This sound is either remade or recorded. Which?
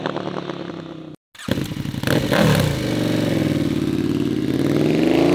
recorded